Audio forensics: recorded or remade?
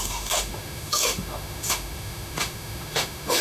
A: remade